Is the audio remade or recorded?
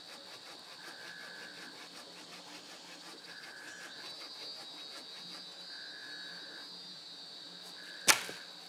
recorded